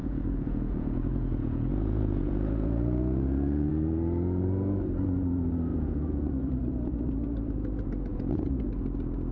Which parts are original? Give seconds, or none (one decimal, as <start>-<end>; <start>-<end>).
3.7-5.7; 6.4-8.1; 8.7-9.3

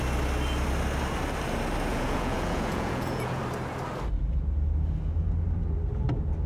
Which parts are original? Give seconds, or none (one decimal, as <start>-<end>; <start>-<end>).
0.0-1.9; 3.4-6.5

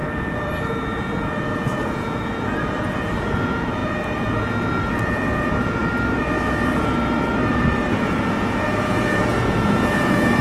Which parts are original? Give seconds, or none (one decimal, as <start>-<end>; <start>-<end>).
5.8-8.0